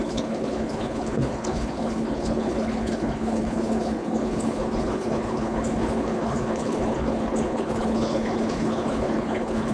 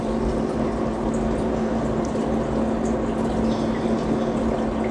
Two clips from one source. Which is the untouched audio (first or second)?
second